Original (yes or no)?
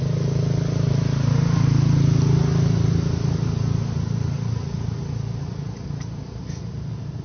yes